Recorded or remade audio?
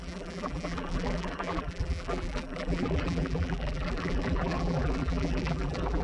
remade